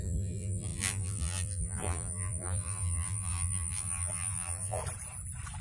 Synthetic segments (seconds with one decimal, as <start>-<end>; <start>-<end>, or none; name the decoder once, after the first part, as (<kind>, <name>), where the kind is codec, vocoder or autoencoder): 0.0-4.8 (vocoder, BigVGAN v2)